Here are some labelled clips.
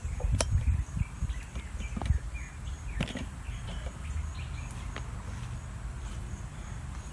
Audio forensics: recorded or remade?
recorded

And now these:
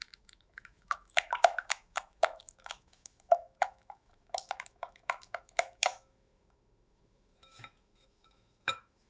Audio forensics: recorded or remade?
remade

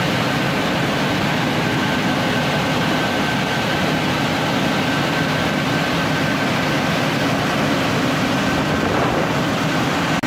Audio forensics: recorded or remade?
recorded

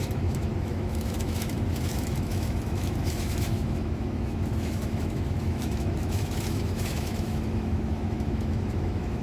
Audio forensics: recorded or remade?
remade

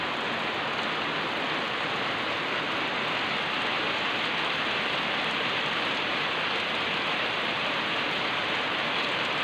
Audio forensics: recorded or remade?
recorded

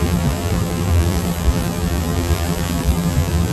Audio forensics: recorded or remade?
remade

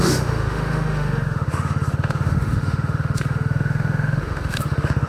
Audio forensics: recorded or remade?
remade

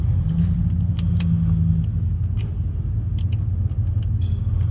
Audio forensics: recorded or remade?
recorded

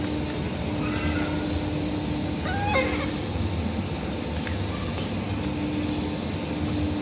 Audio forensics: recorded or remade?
recorded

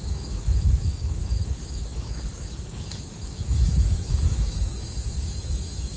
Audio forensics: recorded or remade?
remade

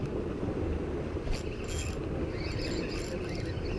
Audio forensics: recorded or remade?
recorded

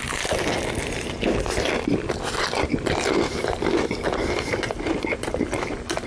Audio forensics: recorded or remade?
remade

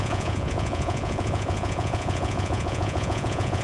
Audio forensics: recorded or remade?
remade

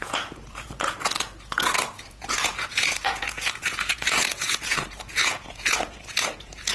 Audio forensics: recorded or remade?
remade